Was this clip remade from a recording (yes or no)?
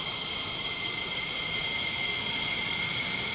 yes